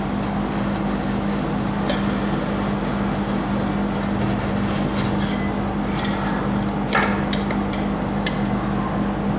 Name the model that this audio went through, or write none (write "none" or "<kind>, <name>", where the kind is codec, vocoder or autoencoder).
none